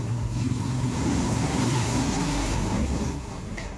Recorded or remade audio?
remade